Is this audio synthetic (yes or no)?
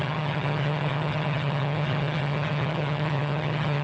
yes